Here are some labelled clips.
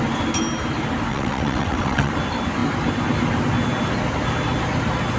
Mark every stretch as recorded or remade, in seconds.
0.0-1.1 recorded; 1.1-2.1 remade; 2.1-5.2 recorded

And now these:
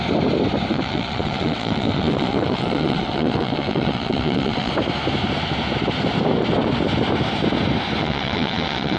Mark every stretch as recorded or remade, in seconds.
0.0-0.7 recorded; 0.7-4.7 remade; 4.7-8.0 recorded; 8.0-9.0 remade

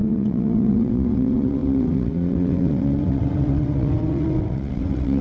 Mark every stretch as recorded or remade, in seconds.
0.0-5.2 remade

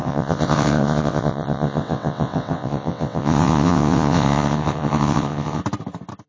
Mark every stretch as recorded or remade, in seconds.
0.0-5.6 remade; 5.6-6.3 recorded

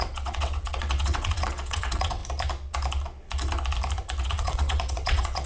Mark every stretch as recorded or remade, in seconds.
0.0-2.2 remade; 2.2-4.2 recorded; 4.2-5.5 remade